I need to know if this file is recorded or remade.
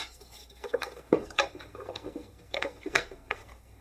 remade